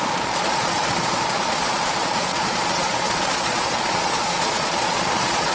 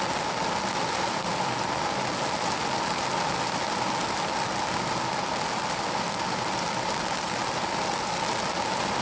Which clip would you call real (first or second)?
second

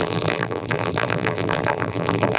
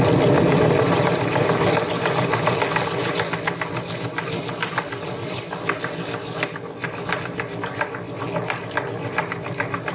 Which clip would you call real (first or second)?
second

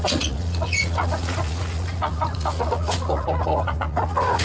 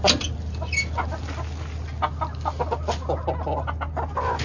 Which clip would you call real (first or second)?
second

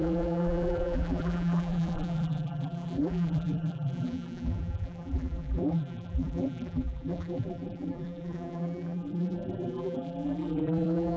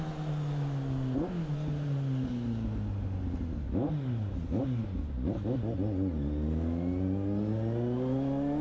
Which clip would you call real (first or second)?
second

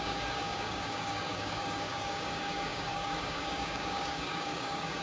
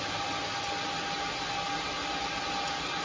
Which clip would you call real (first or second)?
second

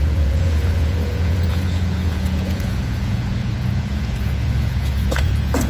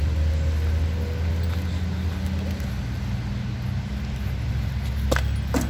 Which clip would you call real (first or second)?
second